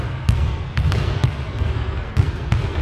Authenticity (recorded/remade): remade